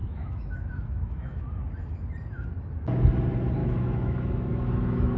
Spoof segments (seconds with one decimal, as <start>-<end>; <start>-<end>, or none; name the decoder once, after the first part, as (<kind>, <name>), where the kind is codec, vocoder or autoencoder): 0.0-1.7 (autoencoder, DAC-VAE); 3.6-5.2